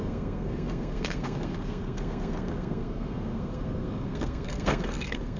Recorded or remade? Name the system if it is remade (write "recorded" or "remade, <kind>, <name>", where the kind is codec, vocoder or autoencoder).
remade, codec, SNAC